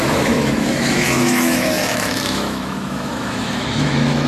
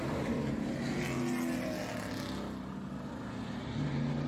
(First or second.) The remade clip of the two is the first